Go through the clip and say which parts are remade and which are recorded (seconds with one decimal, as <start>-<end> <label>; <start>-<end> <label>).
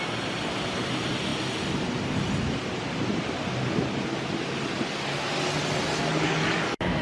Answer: 0.0-6.1 recorded; 6.1-7.0 remade